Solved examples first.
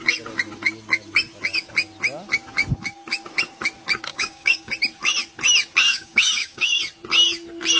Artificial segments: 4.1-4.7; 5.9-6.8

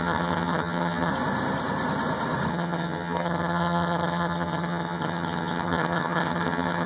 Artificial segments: 0.0-1.1; 2.5-6.9

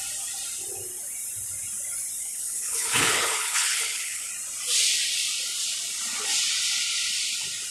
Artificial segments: 2.2-4.3

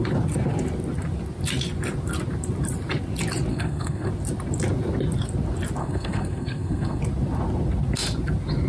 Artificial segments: 3.5-4.1; 5.8-7.0

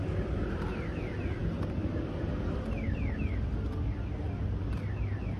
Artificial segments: none

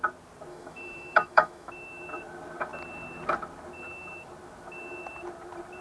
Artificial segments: 0.5-1.7

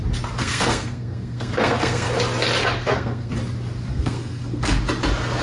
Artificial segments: 0.4-2.1; 2.6-3.3; 3.9-4.8